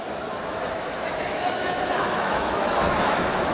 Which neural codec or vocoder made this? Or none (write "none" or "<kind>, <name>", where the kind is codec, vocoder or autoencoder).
autoencoder, DAC-VAE